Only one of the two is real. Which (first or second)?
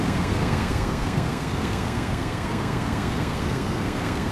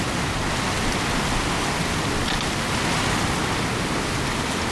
second